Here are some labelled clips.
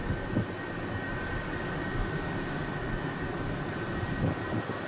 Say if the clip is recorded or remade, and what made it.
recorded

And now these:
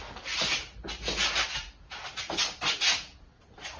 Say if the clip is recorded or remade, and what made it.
recorded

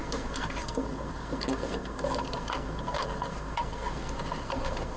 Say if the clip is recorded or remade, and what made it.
remade, codec, SNAC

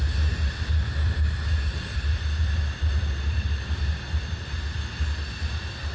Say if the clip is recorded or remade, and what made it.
recorded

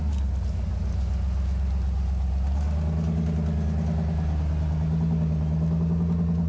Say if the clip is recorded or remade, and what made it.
recorded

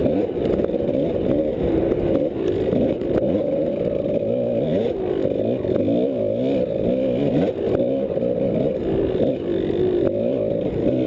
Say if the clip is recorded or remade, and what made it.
recorded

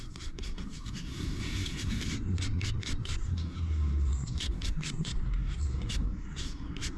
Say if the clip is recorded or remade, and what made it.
remade, codec, SNAC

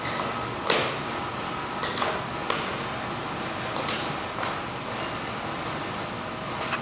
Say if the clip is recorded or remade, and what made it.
recorded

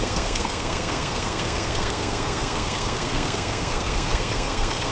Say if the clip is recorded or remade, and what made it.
remade, codec, SNAC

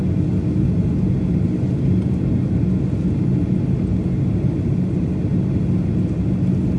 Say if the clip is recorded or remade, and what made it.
recorded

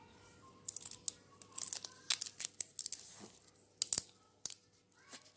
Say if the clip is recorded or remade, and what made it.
recorded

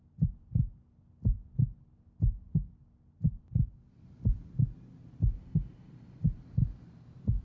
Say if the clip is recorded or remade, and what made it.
recorded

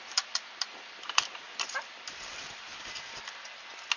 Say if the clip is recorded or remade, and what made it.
remade, vocoder, BigVGAN v2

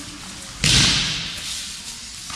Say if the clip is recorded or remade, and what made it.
recorded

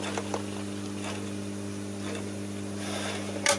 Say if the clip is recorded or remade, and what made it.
recorded